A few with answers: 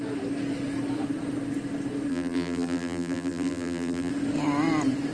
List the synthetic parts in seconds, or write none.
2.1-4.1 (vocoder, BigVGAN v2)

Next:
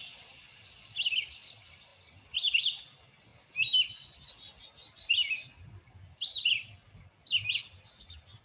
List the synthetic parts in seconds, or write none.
none

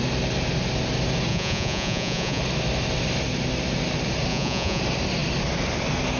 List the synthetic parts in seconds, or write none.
1.3-2.4 (vocoder, Vocos); 4.3-4.8

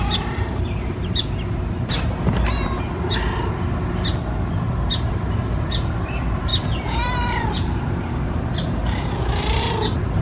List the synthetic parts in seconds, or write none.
0.0-1.0 (vocoder, BigVGAN v2); 5.1-6.5; 7.1-10.2

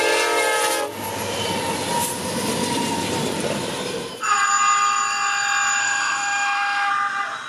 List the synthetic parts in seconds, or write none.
5.8-6.9 (autoencoder, DAC-VAE)

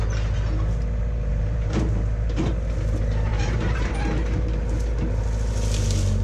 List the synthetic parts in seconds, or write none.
1.3-2.5 (vocoder, BigVGAN v2); 3.3-3.9

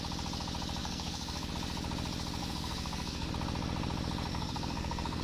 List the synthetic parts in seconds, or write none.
0.8-1.5 (codec, SNAC); 2.4-3.3; 4.3-5.2